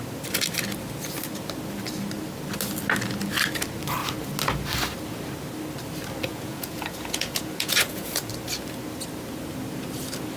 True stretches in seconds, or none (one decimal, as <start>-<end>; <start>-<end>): 0.0-6.3; 8.3-10.4